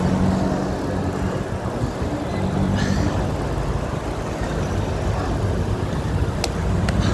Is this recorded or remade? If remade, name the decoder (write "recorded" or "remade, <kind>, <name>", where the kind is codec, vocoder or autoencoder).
recorded